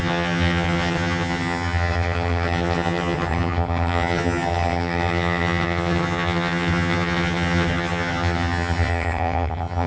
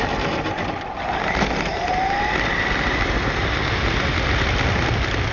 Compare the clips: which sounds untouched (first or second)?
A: second